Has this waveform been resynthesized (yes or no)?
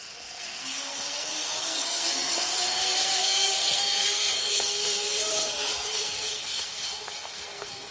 yes